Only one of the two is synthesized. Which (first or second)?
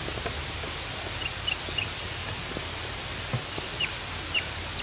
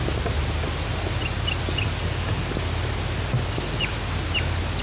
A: first